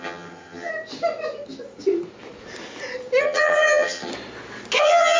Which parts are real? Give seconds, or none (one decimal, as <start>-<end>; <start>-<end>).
0.7-3.2; 4.1-4.8